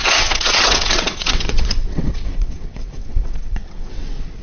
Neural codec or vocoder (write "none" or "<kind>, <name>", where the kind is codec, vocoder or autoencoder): vocoder, WaveNeXt